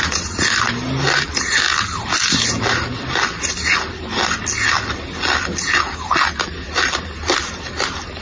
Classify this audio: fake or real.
real